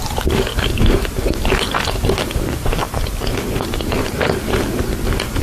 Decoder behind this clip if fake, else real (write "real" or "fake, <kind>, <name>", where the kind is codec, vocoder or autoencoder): real